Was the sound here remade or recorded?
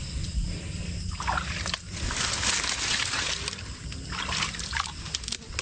recorded